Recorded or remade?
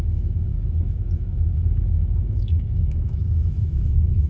remade